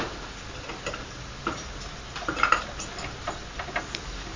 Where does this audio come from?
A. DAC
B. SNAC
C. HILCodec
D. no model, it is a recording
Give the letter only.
D